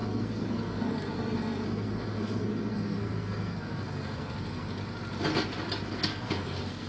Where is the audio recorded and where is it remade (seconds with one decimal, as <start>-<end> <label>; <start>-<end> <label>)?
0.0-4.8 remade; 4.8-5.8 recorded; 5.8-6.9 remade

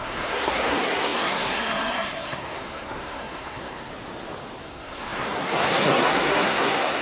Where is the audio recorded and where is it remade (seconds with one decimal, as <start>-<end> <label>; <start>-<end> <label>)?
0.0-3.9 remade; 3.9-4.6 recorded; 4.6-7.0 remade

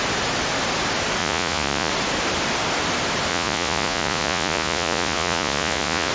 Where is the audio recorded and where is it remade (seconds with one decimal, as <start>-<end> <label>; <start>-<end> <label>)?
0.0-1.2 recorded; 1.2-1.9 remade; 1.9-3.3 recorded; 3.3-6.1 remade

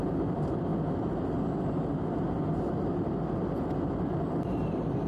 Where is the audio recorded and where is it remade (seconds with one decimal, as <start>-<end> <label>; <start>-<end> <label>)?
0.0-0.7 remade; 0.7-3.7 recorded; 3.7-5.1 remade